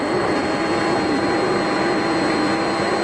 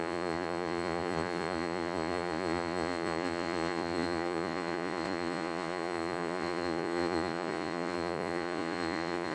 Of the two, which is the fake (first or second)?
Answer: second